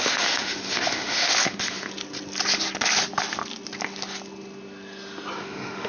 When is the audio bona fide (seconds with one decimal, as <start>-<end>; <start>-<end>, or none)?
1.9-5.4